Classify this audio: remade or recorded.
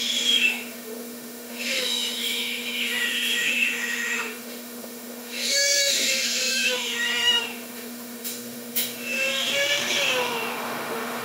remade